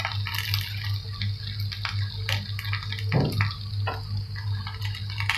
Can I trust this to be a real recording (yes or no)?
yes